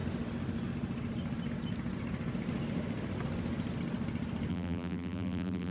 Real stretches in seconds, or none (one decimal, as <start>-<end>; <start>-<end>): 0.0-4.5